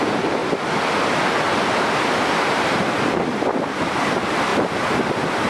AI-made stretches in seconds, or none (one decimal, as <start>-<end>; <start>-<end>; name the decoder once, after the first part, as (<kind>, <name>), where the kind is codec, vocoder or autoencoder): 0.0-0.4 (vocoder, BigVGAN v2); 2.4-4.5